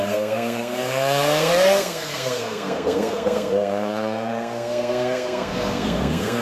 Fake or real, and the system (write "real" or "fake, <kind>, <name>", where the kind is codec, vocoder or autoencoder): fake, codec, SNAC